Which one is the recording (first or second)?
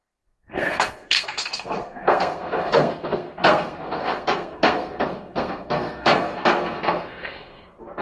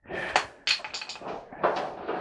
second